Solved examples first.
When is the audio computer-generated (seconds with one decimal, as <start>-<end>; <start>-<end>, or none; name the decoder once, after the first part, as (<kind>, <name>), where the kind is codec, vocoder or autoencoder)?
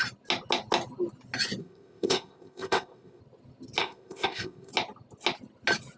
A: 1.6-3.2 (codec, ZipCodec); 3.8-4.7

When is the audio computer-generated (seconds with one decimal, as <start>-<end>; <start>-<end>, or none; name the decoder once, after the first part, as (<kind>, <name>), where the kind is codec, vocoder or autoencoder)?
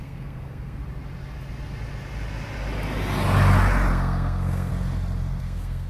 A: 0.0-0.8 (codec, SNAC); 3.9-4.7; 5.4-5.9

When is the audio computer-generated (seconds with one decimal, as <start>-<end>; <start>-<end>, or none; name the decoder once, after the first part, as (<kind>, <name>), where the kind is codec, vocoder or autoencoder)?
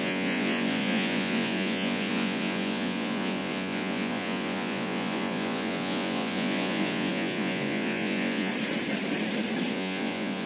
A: 0.0-8.5 (vocoder, Vocos); 9.7-10.5